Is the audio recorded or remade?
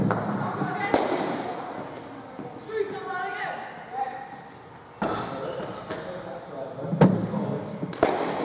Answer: recorded